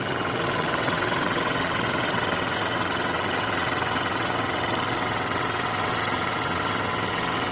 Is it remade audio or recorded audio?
remade